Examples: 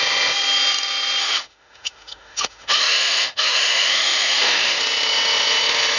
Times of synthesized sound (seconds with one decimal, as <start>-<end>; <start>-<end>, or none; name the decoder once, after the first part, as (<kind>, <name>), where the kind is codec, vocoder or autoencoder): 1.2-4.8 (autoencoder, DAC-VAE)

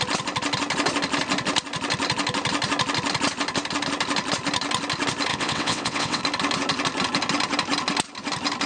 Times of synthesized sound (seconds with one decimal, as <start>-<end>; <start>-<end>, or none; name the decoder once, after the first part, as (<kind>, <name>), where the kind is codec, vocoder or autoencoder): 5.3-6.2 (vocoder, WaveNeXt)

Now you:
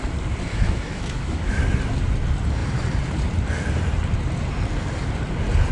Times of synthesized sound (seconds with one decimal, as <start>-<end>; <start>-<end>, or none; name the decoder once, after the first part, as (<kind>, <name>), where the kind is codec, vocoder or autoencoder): 0.5-1.6 (autoencoder, DAC-VAE)